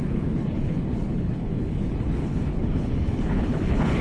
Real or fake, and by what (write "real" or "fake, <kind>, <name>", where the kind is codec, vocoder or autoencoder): fake, codec, HILCodec